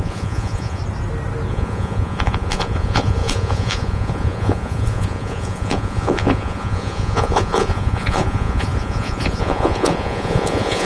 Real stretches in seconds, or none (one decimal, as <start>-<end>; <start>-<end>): 0.8-1.5